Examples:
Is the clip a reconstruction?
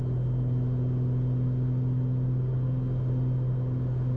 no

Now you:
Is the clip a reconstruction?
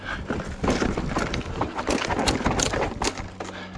no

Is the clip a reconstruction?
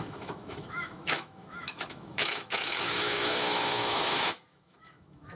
yes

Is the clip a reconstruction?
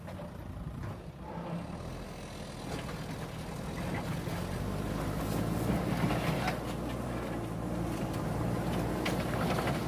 no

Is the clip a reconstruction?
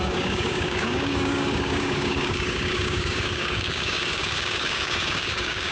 yes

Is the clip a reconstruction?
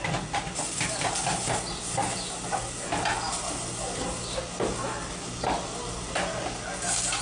no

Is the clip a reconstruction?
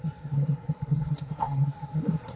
yes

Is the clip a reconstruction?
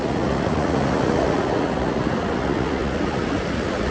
yes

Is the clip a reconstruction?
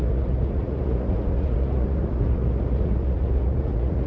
yes